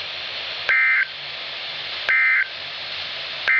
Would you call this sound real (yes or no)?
no